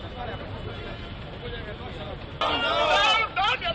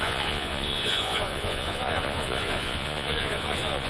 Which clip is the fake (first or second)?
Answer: second